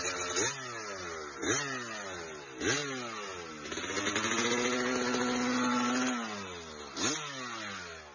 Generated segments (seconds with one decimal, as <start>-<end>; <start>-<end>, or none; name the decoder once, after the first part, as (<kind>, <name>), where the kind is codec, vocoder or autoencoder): none